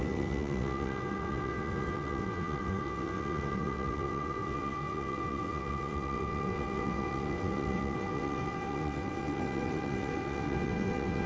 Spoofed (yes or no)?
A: yes